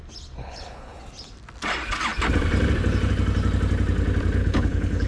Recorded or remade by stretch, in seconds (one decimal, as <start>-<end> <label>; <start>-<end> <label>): 0.0-0.4 recorded; 0.4-1.0 remade; 1.0-4.4 recorded; 4.4-5.1 remade